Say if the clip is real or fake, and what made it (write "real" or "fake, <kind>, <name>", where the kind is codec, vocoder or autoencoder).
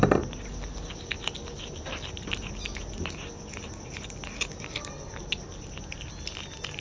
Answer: real